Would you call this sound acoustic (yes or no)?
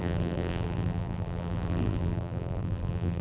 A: no